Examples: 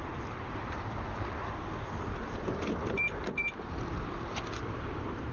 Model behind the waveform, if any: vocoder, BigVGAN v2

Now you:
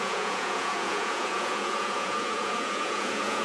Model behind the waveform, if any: vocoder, Vocos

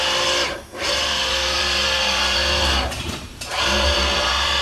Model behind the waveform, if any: vocoder, BigVGAN v2